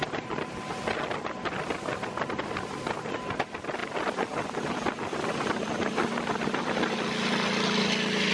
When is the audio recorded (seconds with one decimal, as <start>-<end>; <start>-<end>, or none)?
0.0-3.8; 7.8-8.3